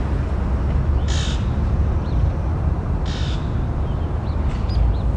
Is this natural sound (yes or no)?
yes